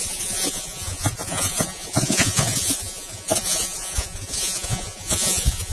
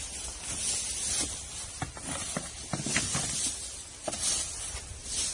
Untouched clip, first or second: second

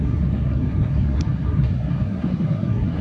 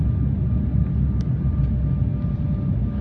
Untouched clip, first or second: second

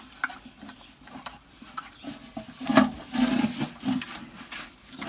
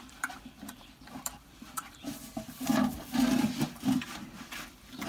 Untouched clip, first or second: first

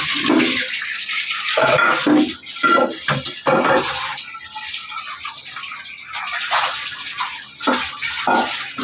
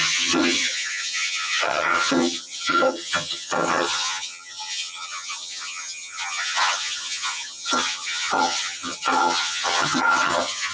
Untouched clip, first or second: first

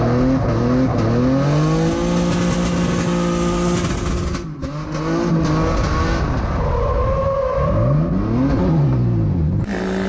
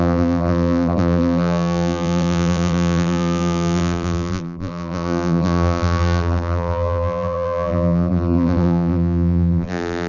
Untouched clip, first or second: first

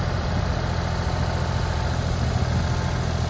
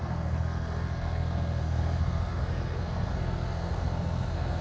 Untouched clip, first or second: first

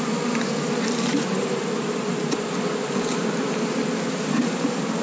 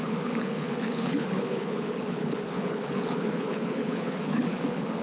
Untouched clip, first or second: first